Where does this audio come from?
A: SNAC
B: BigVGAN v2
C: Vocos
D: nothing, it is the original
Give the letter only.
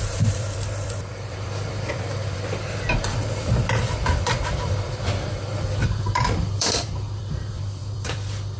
B